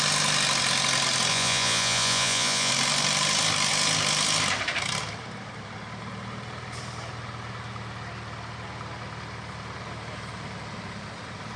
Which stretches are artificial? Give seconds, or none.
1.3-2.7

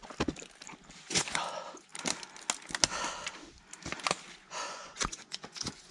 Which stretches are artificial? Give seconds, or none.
1.0-1.9; 4.4-5.9

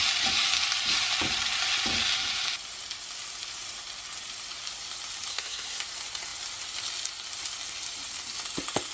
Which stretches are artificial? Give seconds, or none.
5.3-5.8